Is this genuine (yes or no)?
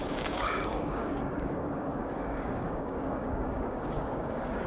no